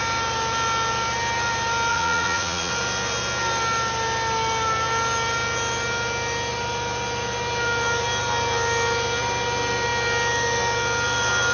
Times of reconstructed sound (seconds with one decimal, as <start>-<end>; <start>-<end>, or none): 1.9-2.7